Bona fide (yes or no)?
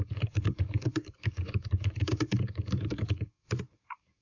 no